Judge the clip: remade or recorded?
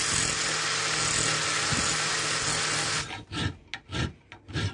recorded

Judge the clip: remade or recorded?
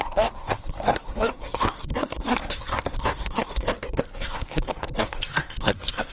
remade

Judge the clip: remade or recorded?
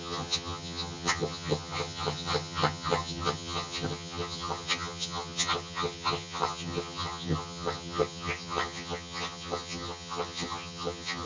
remade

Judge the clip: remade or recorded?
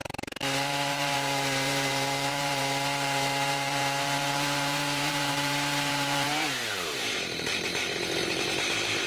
remade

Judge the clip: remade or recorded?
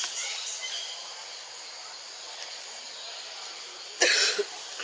recorded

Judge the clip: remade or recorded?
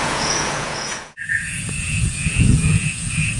remade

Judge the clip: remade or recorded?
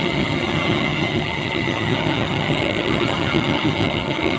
remade